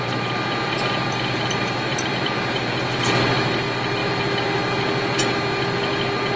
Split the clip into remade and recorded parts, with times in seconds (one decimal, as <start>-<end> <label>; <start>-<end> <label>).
0.0-6.4 recorded